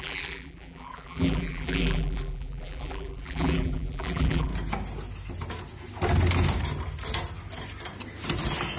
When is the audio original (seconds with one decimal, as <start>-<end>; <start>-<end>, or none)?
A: 4.5-8.8